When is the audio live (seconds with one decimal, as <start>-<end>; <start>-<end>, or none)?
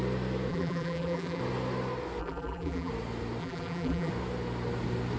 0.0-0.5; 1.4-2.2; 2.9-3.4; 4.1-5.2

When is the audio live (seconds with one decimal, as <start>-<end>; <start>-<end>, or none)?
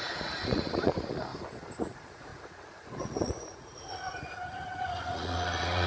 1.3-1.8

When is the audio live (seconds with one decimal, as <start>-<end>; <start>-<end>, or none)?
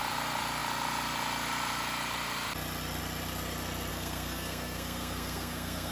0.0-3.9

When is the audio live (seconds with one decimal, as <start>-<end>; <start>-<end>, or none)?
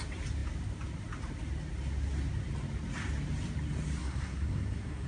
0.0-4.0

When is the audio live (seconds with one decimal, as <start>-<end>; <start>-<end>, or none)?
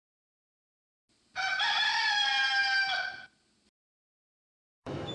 0.0-4.6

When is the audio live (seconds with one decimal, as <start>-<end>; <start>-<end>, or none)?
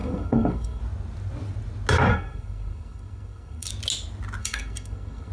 0.8-2.1; 3.7-4.4